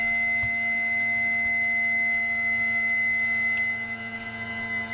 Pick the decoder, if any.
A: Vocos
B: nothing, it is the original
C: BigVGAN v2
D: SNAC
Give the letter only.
B